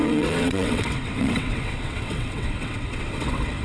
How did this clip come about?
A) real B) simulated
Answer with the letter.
B